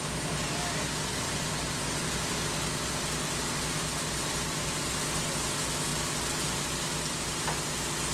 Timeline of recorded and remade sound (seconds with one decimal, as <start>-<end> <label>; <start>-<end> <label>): 0.0-1.1 recorded; 1.1-2.6 remade; 2.6-8.1 recorded

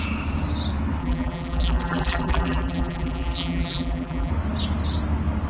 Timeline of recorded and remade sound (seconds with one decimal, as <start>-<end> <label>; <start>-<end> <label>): 0.0-1.0 recorded; 1.0-4.3 remade; 4.3-5.5 recorded

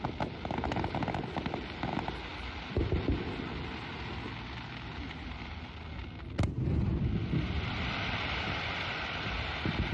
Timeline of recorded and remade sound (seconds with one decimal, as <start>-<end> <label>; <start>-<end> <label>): 0.0-6.0 recorded; 6.0-9.9 remade